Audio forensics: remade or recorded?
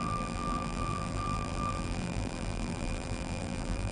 remade